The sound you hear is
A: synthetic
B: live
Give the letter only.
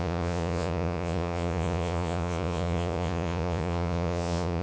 A